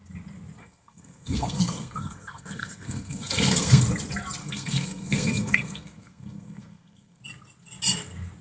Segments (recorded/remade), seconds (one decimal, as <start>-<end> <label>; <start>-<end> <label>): 0.0-0.6 recorded; 0.6-3.8 remade; 3.8-4.4 recorded; 4.4-7.2 remade; 7.2-8.4 recorded